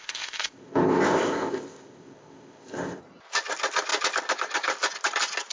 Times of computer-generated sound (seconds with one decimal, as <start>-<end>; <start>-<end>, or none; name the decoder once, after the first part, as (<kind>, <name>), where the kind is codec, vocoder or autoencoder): 0.0-3.0 (codec, ZipCodec)